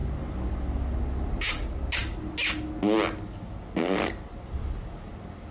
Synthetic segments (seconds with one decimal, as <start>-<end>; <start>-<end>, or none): none